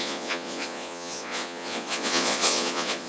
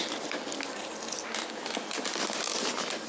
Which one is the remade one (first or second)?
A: first